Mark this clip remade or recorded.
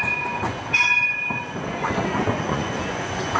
remade